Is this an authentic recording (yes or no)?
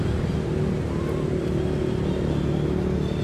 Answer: yes